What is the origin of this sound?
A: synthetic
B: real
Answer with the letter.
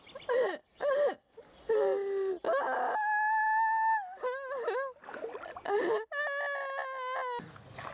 B